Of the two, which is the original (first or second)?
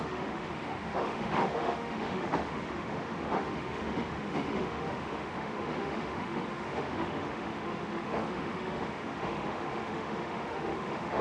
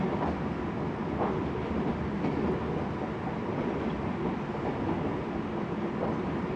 second